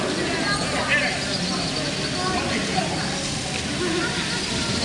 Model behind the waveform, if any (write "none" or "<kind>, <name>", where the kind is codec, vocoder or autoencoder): none